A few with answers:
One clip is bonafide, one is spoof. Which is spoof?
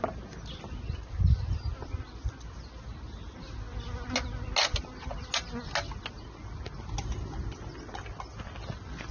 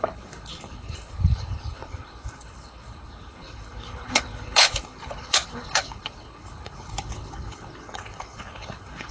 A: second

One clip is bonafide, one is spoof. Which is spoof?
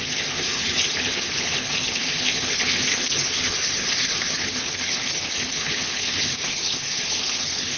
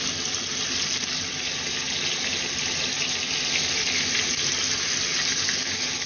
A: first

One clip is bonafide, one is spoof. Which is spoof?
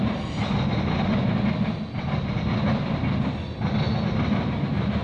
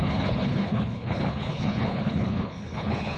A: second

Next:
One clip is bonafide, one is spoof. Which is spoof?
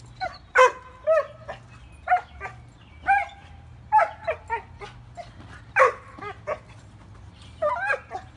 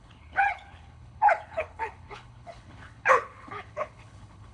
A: second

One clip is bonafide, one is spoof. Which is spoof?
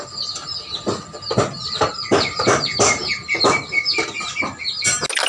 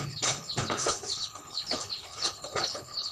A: second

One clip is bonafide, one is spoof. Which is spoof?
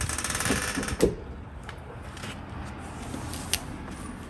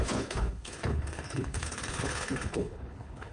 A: second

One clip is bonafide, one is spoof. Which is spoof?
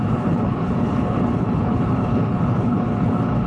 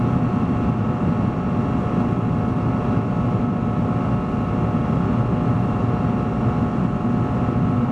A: first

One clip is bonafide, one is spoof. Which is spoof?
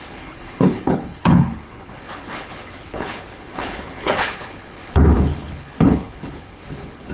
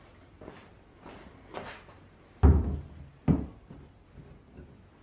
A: first